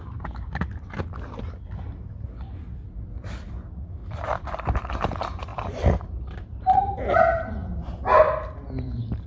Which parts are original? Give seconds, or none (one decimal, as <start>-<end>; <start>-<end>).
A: 0.0-4.0; 4.9-5.5; 6.8-9.3